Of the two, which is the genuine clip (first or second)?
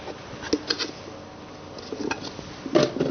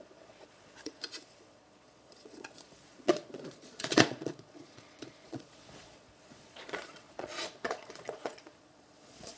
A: first